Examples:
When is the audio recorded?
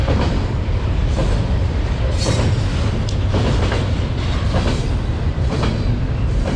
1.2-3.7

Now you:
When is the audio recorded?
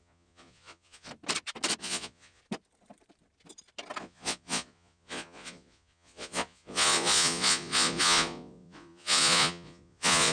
1.1-1.8; 2.4-4.0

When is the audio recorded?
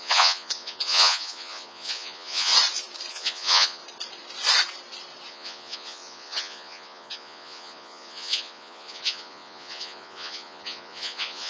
2.5-3.1; 3.8-5.3